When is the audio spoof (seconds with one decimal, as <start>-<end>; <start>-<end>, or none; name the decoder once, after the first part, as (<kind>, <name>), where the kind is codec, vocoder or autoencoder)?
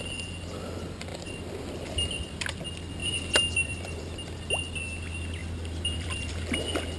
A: 1.1-1.7 (vocoder, BigVGAN v2); 3.0-4.0; 5.4-6.3